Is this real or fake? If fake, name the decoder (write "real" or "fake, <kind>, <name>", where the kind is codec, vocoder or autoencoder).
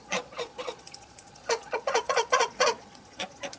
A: fake, vocoder, Vocos